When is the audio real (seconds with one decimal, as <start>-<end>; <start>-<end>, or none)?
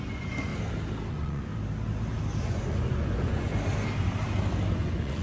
0.5-1.1; 1.5-2.4; 3.5-4.7